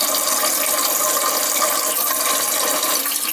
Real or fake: real